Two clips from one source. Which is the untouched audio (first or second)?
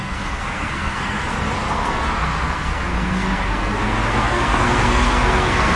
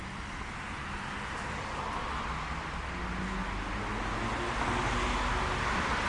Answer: second